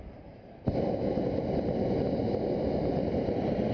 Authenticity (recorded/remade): recorded